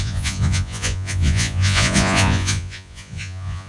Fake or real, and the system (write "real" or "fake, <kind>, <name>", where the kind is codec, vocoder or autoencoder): fake, vocoder, Vocos